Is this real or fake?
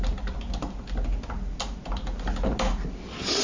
real